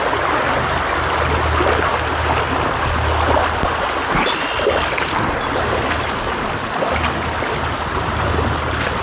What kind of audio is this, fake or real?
real